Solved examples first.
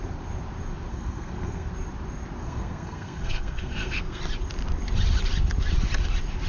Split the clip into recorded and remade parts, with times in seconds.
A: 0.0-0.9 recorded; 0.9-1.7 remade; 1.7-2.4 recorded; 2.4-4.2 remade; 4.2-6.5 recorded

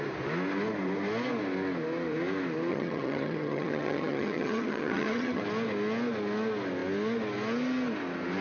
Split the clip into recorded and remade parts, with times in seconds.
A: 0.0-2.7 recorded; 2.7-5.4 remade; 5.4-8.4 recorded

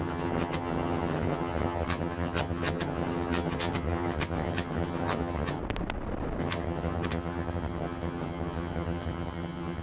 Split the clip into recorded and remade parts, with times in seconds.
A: 0.0-5.6 remade; 5.6-6.4 recorded; 6.4-9.8 remade

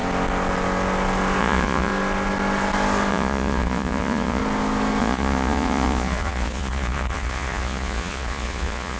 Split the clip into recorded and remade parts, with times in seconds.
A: 0.0-1.4 recorded; 1.4-1.9 remade; 1.9-3.1 recorded; 3.1-4.4 remade; 4.4-5.0 recorded; 5.0-9.0 remade

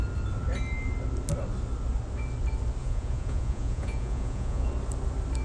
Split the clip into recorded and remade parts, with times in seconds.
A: 0.0-2.8 recorded; 2.8-4.7 remade; 4.7-5.4 recorded